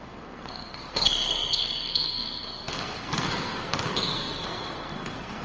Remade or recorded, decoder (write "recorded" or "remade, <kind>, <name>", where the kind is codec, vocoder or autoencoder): remade, codec, SNAC